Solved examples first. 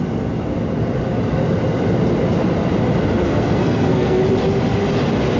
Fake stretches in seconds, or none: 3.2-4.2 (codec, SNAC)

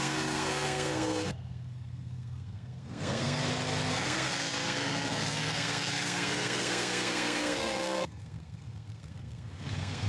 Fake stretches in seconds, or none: 0.0-3.4 (codec, SNAC); 3.9-10.1

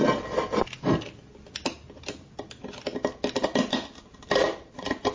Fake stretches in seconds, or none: none